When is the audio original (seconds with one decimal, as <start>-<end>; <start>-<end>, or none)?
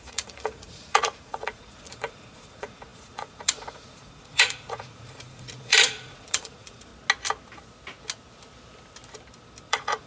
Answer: 6.9-9.7